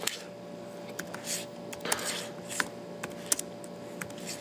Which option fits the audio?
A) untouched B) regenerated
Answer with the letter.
A